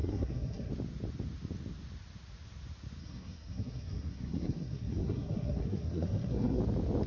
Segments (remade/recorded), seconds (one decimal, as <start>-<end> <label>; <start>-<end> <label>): 0.0-0.7 remade; 0.7-3.0 recorded; 3.0-6.6 remade; 6.6-7.1 recorded

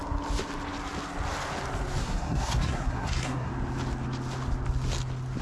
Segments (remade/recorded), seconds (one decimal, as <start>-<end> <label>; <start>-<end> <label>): 0.0-2.0 recorded; 2.0-3.5 remade; 3.5-5.4 recorded

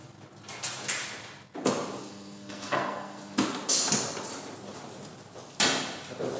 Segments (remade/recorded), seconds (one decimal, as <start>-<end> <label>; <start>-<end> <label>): 0.0-2.0 recorded; 2.0-3.2 remade; 3.2-6.4 recorded

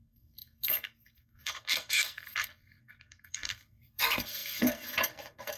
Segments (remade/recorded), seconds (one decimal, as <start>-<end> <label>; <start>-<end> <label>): 0.0-5.6 remade

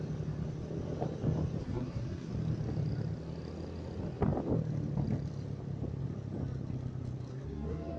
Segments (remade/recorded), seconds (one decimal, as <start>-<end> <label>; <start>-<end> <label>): 0.0-1.6 recorded; 1.6-2.3 remade; 2.3-7.3 recorded; 7.3-8.0 remade

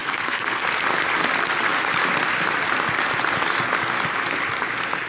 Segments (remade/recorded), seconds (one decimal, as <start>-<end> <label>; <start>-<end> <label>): 0.0-0.6 remade; 0.6-5.1 recorded

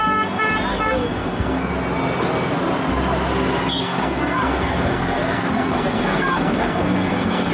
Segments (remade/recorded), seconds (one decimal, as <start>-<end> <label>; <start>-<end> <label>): 0.0-0.7 recorded; 0.7-1.7 remade; 1.7-3.7 recorded; 3.7-7.5 remade

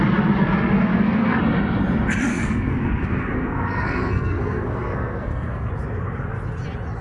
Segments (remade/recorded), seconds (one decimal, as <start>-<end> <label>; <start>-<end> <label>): 0.0-0.9 recorded; 0.9-1.4 remade; 1.4-2.3 recorded; 2.3-5.7 remade; 5.7-7.0 recorded